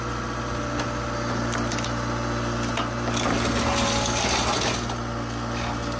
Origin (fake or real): real